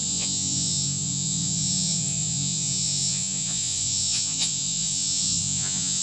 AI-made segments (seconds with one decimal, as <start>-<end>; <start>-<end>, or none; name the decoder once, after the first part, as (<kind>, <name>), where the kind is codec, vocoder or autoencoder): 0.0-6.0 (vocoder, Vocos)